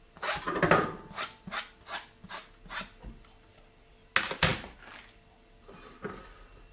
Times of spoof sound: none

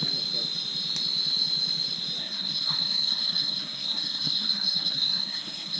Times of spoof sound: 2.2-5.8 (codec, SNAC)